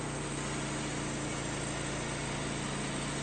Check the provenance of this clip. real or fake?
real